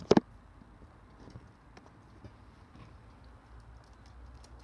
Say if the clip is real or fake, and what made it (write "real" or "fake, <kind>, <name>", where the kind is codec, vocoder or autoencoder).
real